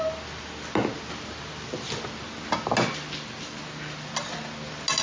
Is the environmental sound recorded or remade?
recorded